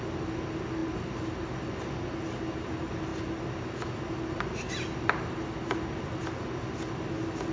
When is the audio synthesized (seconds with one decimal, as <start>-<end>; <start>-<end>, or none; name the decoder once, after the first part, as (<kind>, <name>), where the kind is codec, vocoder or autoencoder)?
none